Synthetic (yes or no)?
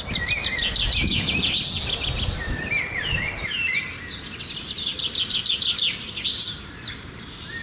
no